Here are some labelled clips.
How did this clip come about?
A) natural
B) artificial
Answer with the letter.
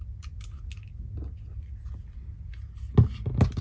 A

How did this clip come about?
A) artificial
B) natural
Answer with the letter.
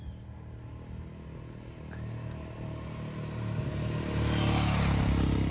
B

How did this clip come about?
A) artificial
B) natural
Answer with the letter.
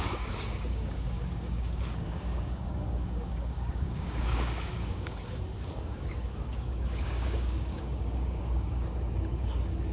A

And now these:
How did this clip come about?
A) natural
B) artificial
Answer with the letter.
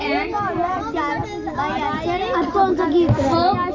A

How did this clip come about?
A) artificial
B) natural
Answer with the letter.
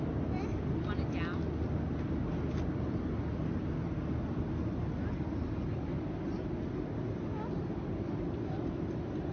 B